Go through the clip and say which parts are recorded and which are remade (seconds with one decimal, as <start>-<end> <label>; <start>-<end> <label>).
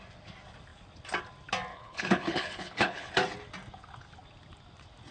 0.0-1.7 recorded; 1.7-3.1 remade; 3.1-5.1 recorded